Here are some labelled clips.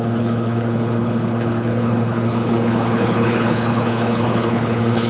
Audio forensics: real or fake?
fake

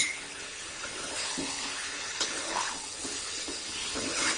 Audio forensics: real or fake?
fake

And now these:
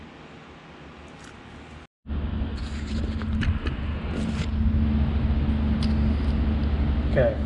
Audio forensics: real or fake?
real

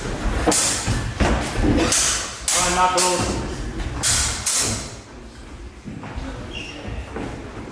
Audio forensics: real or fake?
real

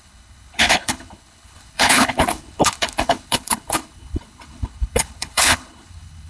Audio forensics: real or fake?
fake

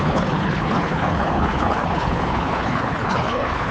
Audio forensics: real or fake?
fake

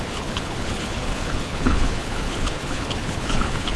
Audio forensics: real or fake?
fake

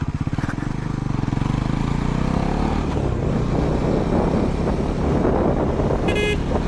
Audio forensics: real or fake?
real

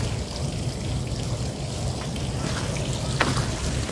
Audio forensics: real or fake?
real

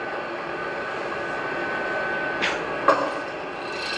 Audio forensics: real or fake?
real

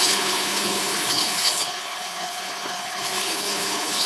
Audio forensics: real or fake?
fake